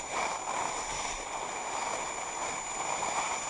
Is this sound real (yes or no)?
yes